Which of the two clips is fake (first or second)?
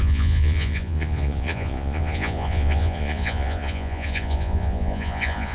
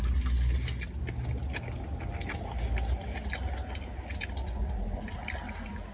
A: first